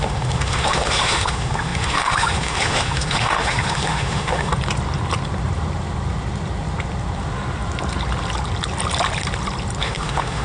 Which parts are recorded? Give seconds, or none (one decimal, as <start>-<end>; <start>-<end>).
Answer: 4.5-9.8